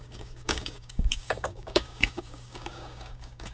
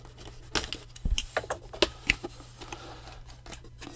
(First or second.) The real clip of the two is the second